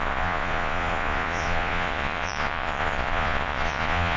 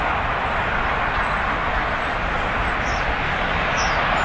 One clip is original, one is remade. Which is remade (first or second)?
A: first